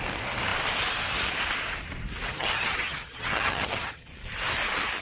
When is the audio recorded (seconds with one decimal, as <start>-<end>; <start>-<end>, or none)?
0.0-2.3; 4.1-5.0